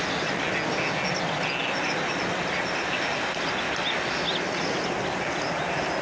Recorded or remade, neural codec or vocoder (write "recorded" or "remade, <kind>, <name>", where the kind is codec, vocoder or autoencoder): recorded